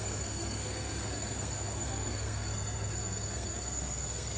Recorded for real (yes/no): no